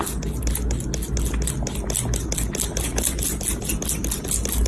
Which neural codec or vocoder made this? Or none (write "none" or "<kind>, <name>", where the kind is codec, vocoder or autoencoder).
none